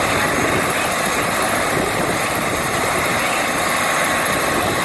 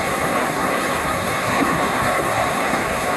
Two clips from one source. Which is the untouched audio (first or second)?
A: first